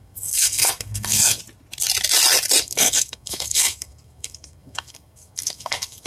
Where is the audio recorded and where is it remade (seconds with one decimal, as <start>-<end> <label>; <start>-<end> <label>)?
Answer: 0.0-1.4 remade; 1.4-2.6 recorded; 2.6-6.1 remade